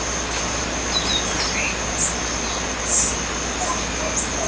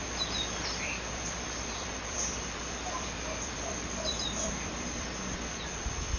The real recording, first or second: first